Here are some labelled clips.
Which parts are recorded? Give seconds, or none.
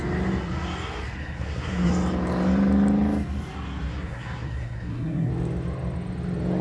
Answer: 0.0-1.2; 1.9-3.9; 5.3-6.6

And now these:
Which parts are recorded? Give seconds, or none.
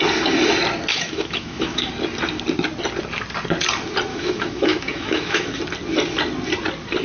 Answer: 0.0-0.9; 1.9-4.1; 5.6-7.0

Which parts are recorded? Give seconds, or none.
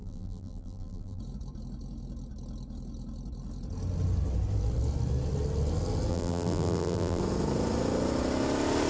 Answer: 1.2-6.1; 7.2-8.9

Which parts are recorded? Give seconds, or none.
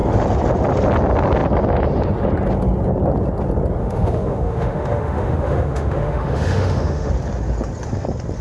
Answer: 0.0-3.8; 7.1-8.4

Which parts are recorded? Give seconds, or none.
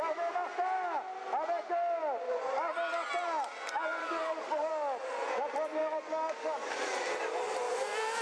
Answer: 0.0-4.0; 4.7-5.8; 6.7-8.2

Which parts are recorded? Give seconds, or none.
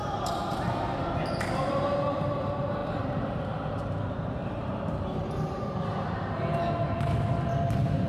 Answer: 0.0-2.8; 6.3-8.1